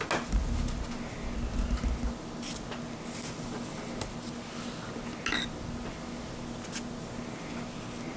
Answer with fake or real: real